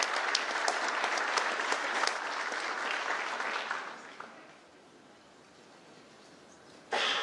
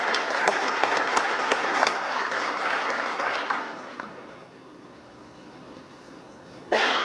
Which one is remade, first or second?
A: second